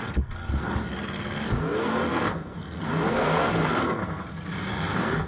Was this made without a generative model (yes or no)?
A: no